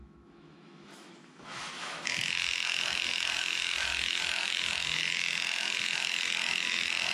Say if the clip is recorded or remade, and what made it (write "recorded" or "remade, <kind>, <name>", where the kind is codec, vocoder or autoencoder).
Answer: remade, autoencoder, DAC-VAE